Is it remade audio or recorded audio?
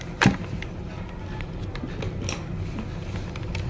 recorded